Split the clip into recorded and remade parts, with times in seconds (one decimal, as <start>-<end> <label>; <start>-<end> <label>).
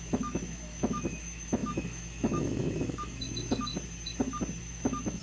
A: 0.0-3.7 remade; 3.7-4.6 recorded; 4.6-5.2 remade